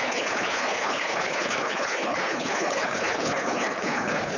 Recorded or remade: remade